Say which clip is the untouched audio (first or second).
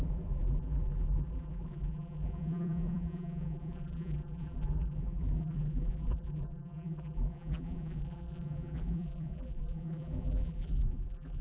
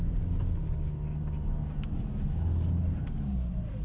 second